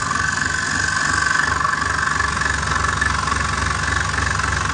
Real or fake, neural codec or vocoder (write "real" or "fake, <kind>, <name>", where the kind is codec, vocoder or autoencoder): real